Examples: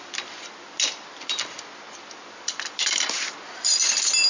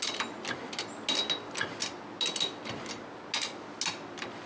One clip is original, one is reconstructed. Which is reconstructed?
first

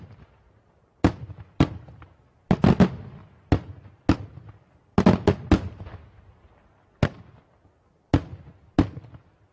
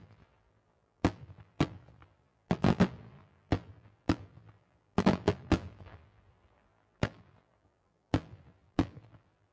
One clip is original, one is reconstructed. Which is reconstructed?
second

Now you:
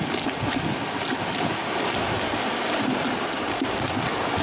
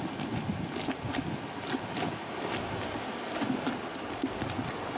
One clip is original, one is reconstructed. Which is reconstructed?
first